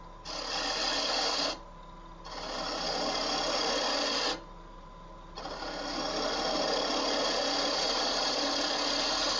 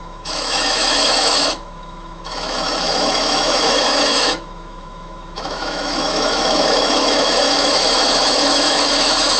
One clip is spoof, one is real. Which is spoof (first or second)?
second